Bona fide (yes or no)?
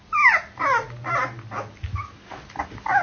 yes